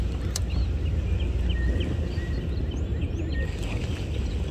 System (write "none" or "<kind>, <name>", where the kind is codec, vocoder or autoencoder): none